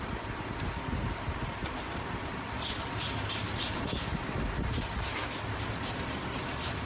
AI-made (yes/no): no